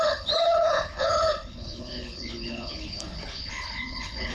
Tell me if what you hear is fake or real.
fake